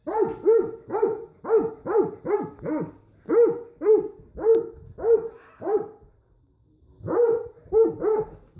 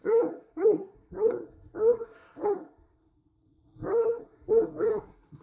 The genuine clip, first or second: first